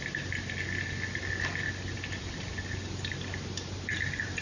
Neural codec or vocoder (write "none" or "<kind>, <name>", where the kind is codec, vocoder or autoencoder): none